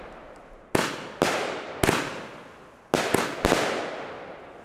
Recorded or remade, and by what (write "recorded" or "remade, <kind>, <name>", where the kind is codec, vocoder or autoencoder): recorded